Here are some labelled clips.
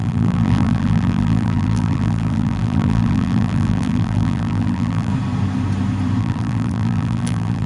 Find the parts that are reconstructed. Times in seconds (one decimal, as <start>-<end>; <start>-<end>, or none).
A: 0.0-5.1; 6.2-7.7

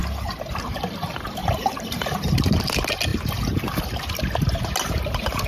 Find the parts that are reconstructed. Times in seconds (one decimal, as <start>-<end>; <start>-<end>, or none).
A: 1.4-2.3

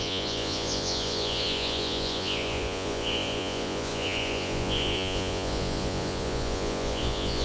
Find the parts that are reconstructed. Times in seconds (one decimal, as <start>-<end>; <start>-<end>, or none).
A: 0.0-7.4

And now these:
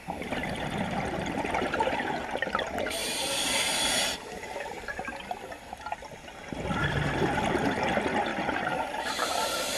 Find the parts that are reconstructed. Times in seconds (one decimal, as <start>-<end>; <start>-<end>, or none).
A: 3.0-4.8; 8.3-9.3